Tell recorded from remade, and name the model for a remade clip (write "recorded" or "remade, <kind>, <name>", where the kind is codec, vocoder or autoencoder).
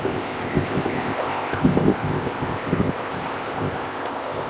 remade, codec, ZipCodec